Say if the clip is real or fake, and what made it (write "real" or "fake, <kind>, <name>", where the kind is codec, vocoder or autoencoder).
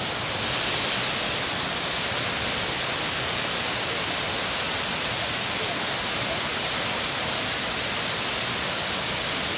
real